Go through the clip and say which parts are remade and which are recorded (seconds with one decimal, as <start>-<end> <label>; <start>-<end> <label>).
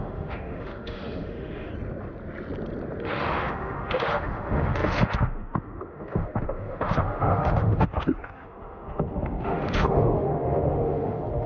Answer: 0.0-1.7 remade; 1.7-3.0 recorded; 3.0-11.5 remade